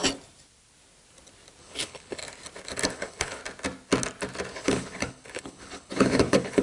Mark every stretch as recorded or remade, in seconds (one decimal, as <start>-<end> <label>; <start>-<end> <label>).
0.0-1.6 recorded; 1.6-2.2 remade; 2.2-2.9 recorded; 2.9-3.4 remade; 3.4-4.5 recorded; 4.5-6.6 remade